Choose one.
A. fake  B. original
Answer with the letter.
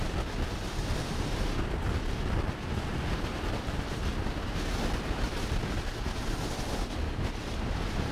B